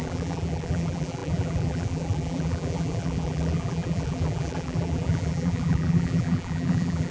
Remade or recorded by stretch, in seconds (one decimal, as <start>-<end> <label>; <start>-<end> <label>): 0.0-7.1 remade